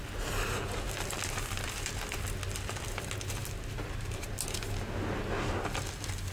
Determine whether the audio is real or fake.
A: real